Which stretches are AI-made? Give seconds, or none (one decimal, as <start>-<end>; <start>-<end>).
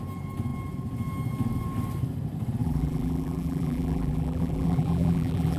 2.6-5.6